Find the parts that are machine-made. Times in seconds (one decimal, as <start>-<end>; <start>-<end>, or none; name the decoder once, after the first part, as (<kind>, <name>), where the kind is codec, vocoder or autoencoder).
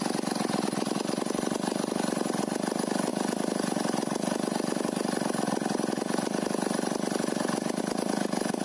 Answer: none